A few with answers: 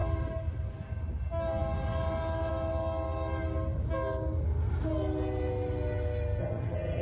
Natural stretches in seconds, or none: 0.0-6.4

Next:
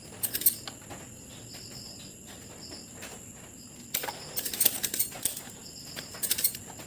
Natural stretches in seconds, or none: 0.0-6.9

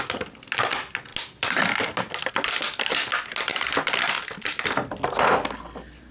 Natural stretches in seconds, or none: 0.0-6.1

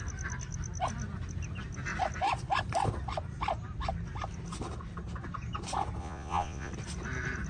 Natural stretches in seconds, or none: 0.0-6.0; 6.7-7.5

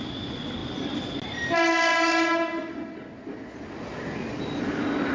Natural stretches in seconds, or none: 0.0-5.1